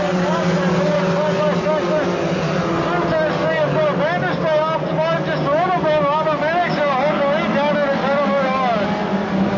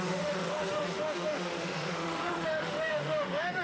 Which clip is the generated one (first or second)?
second